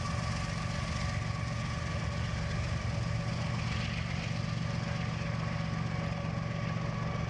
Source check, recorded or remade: recorded